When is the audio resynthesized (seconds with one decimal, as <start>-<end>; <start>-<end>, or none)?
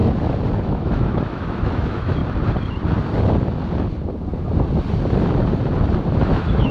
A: 0.6-2.2; 6.2-6.7